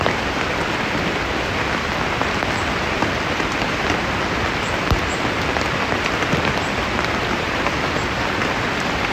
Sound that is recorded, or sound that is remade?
remade